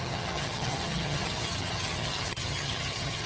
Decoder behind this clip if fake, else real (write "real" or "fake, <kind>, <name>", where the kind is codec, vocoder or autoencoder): fake, vocoder, HiFi-GAN